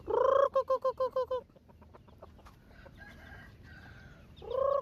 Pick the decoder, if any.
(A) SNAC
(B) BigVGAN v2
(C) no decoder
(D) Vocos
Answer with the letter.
C